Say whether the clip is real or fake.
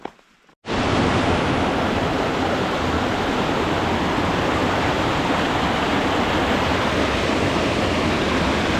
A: real